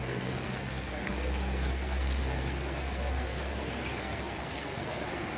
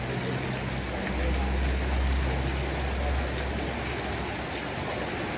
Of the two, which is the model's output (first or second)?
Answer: first